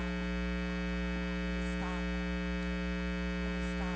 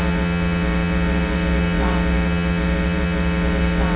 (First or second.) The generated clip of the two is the second